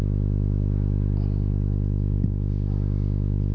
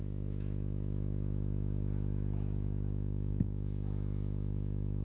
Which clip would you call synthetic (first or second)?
second